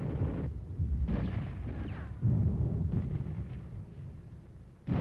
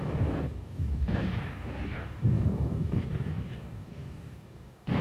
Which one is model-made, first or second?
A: second